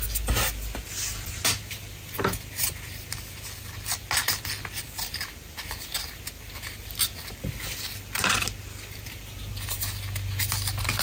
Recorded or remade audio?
recorded